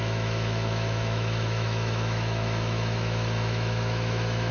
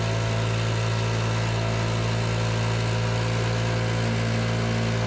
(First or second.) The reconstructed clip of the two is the first